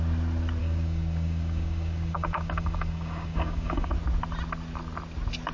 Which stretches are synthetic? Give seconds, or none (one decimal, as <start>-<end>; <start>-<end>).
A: 0.6-3.9